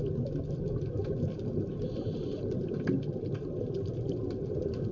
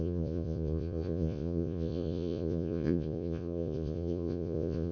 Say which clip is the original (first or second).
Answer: first